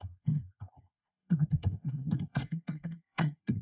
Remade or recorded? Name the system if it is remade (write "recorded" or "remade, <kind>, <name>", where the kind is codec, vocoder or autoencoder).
remade, codec, SNAC